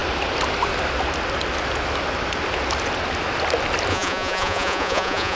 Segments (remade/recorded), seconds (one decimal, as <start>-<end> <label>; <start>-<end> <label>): 0.0-3.9 recorded; 3.9-5.4 remade